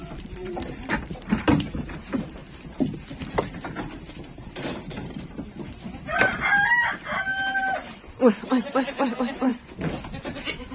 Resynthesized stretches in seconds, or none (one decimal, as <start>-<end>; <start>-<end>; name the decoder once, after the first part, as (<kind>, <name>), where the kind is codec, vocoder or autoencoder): 0.0-2.4 (vocoder, BigVGAN v2); 3.2-9.5